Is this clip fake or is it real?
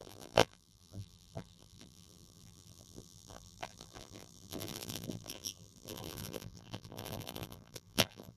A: fake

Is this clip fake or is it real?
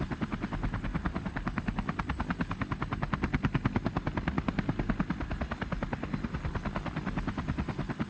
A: real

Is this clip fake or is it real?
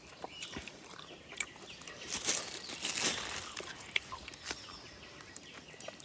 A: real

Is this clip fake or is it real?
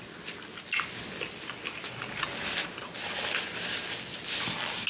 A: real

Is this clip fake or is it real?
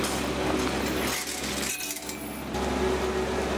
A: real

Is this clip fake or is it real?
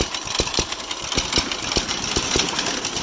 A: real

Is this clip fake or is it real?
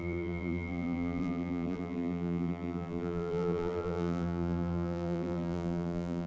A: fake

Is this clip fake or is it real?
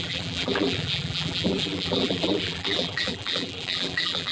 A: fake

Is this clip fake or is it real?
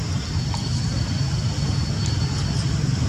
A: real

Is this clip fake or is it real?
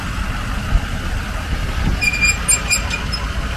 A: real